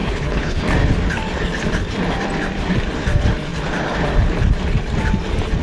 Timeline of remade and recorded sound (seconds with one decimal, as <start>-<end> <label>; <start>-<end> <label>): 0.0-0.6 remade; 0.6-5.6 recorded